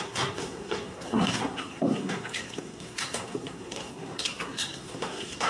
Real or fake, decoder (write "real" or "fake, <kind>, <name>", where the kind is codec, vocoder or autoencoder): fake, codec, SNAC